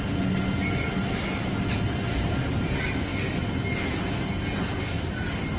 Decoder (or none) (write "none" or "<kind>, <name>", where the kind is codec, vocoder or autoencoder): none